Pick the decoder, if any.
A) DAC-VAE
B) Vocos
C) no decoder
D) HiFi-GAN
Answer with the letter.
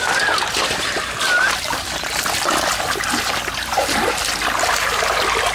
C